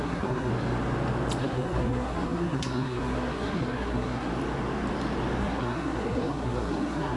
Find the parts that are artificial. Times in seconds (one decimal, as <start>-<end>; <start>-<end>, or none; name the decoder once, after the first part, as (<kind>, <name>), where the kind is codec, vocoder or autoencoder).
0.0-0.5 (codec, SNAC); 1.4-4.3; 5.4-7.2